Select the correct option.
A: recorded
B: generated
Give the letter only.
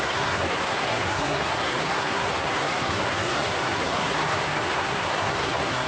B